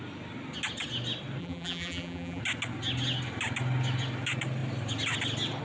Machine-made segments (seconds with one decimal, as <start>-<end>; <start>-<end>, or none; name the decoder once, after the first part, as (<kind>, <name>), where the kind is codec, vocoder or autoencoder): 1.4-2.4 (vocoder, BigVGAN v2)